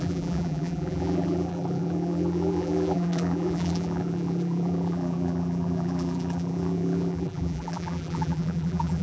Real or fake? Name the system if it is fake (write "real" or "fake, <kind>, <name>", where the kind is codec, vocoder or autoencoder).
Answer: fake, vocoder, BigVGAN v2